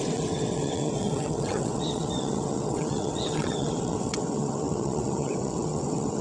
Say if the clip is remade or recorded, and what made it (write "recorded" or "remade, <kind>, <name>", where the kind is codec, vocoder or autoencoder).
remade, vocoder, WaveNeXt